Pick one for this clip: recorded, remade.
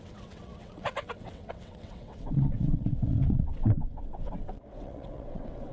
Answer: remade